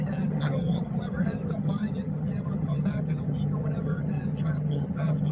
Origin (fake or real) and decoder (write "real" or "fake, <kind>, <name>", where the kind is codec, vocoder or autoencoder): fake, vocoder, HiFi-GAN